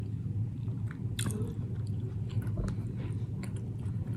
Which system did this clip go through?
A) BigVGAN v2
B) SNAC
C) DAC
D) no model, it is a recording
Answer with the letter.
D